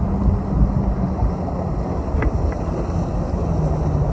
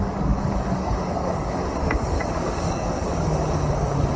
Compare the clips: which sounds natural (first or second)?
first